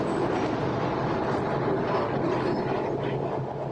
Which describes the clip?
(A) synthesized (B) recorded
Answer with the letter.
B